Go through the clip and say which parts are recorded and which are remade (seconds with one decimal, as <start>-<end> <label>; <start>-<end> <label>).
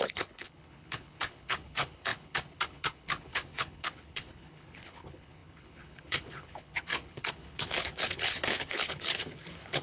0.0-9.8 remade